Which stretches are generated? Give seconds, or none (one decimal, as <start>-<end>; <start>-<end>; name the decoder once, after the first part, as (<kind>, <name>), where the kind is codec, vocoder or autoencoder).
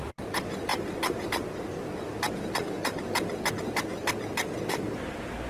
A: none